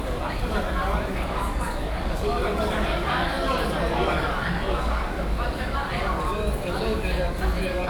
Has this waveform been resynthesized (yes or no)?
yes